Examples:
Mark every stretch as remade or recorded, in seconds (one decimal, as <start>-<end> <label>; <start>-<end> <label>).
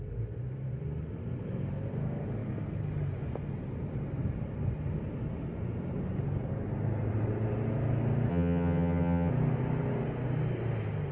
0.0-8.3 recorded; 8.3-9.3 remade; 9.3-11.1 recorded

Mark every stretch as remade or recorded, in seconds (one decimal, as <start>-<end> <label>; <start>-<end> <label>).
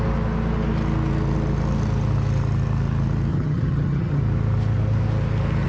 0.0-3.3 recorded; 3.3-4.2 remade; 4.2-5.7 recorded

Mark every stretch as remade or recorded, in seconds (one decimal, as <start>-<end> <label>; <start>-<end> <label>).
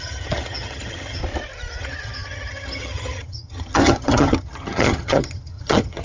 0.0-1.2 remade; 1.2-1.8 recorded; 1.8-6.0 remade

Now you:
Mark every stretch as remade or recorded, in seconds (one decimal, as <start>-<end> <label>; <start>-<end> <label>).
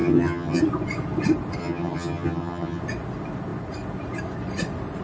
0.0-0.6 remade; 0.6-1.6 recorded; 1.6-2.8 remade; 2.8-5.0 recorded